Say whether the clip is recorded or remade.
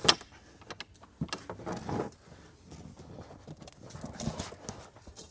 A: recorded